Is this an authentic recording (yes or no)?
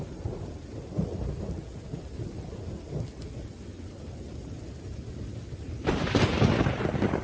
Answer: yes